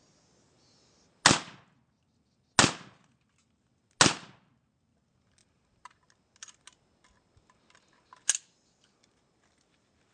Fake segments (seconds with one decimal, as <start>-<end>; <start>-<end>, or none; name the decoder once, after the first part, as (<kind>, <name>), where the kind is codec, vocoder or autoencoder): none